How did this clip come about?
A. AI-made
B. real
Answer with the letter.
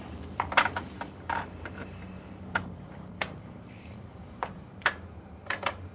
A